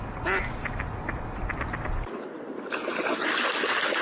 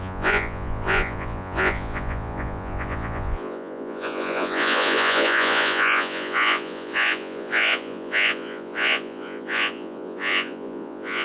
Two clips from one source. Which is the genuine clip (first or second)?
first